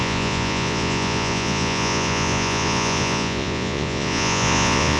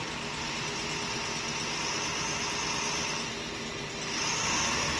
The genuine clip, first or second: second